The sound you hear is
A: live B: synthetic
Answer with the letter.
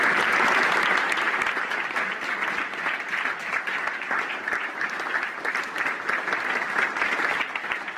A